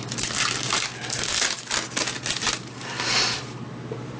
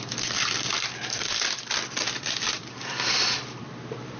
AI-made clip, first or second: second